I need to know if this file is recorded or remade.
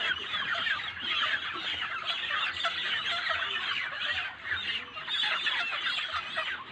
recorded